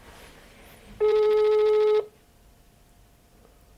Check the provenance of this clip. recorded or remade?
remade